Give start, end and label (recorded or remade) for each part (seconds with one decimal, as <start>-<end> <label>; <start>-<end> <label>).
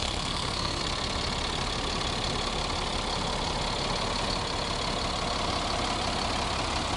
0.0-0.8 remade; 0.8-7.0 recorded